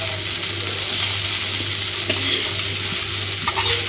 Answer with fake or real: real